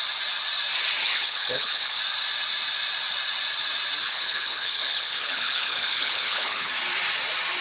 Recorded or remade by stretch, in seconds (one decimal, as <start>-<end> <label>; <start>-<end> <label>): 0.0-1.0 recorded; 1.0-2.0 remade; 2.0-4.0 recorded; 4.0-6.7 remade; 6.7-7.6 recorded